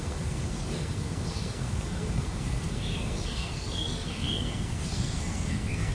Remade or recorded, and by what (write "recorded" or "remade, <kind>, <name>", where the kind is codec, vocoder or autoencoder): remade, codec, SNAC